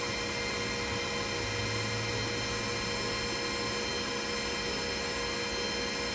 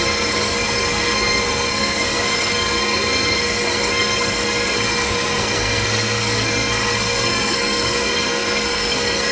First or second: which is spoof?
second